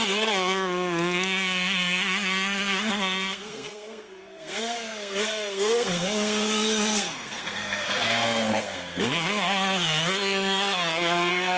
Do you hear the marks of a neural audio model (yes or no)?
yes